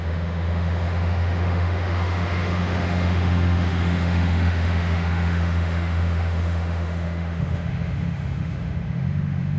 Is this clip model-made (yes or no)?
yes